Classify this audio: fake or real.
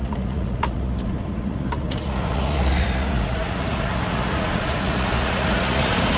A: fake